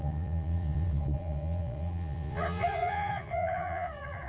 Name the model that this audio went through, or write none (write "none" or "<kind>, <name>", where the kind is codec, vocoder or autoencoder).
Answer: vocoder, Vocos